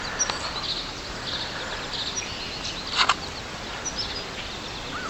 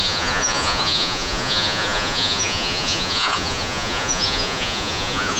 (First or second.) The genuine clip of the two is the first